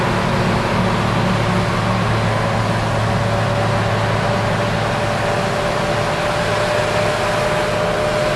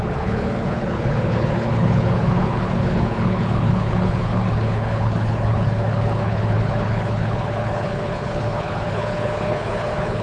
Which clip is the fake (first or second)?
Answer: second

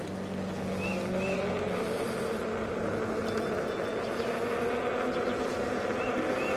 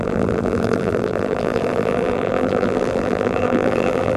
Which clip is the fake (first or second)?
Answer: second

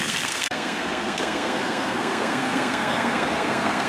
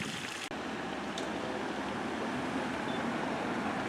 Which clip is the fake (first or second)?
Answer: first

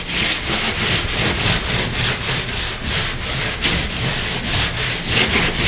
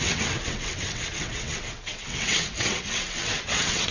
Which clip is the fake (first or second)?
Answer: second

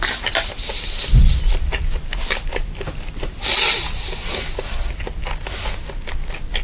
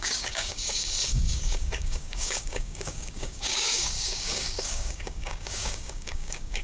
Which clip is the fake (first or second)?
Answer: second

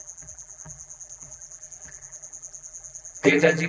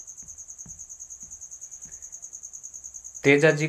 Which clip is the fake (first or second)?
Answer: first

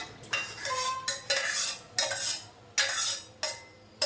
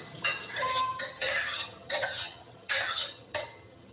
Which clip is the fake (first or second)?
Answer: second